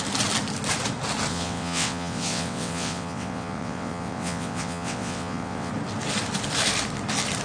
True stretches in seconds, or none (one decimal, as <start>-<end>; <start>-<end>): 0.0-1.3; 5.7-7.4